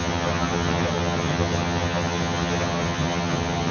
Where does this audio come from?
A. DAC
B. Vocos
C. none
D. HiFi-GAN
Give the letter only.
D